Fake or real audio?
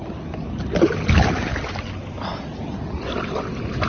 real